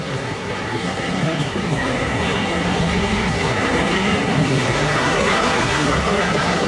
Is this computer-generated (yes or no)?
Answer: yes